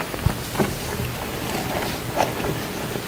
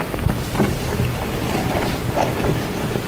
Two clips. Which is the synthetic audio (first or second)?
second